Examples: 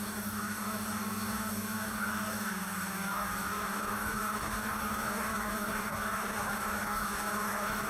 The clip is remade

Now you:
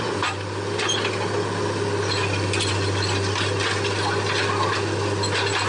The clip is recorded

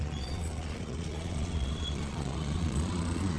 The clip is remade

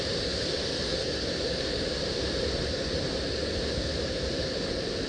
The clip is recorded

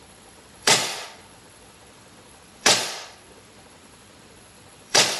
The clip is remade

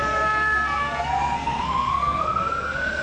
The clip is remade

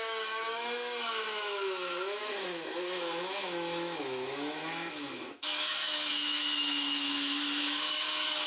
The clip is remade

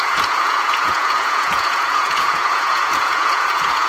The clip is remade